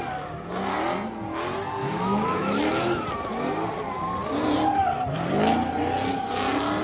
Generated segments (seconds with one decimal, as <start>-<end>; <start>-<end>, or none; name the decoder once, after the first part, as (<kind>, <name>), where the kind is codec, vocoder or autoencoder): 1.8-2.6 (autoencoder, DAC-VAE)